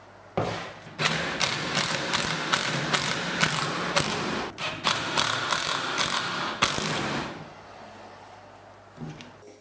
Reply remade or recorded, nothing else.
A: recorded